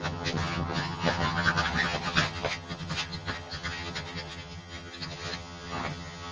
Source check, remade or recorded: remade